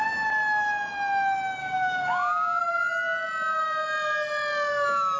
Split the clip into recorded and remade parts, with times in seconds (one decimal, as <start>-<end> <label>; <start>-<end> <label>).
0.0-1.6 recorded; 1.6-2.6 remade; 2.6-5.2 recorded